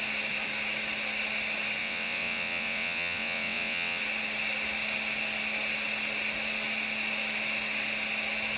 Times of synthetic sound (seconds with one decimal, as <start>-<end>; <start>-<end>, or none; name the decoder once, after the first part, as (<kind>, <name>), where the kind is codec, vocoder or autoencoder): 1.8-4.0 (vocoder, WaveNeXt)